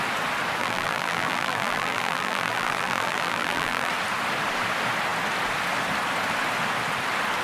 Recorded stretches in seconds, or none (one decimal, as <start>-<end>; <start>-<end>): 0.0-0.6; 3.9-7.4